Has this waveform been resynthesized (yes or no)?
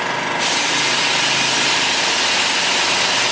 no